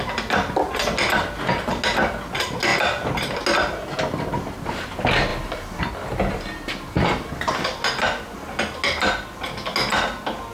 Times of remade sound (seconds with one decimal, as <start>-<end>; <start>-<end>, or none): none